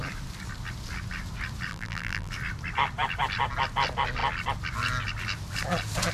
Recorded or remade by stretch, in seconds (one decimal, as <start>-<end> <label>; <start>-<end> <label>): 0.0-1.7 recorded; 1.7-2.3 remade; 2.3-6.1 recorded